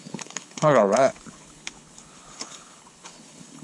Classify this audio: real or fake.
fake